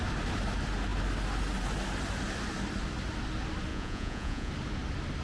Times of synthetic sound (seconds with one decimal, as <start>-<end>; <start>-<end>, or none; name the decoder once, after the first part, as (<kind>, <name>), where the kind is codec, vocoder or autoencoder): 3.7-4.5 (vocoder, Vocos)